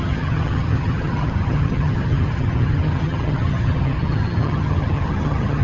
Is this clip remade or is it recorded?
remade